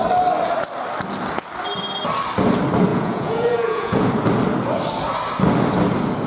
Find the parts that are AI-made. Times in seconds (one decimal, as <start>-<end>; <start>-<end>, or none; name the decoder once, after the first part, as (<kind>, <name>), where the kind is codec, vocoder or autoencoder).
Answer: 2.9-4.1 (vocoder, Vocos)